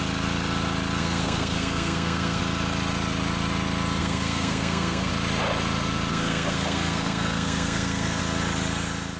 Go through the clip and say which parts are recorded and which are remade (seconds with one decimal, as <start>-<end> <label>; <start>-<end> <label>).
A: 0.0-1.0 recorded; 1.0-2.4 remade; 2.4-4.0 recorded; 4.0-5.1 remade; 5.1-6.1 recorded; 6.1-8.2 remade; 8.2-9.2 recorded